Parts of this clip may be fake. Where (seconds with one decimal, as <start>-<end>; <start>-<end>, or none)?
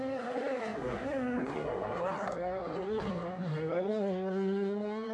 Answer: 0.0-5.1